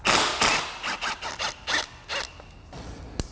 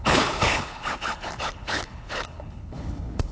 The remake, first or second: second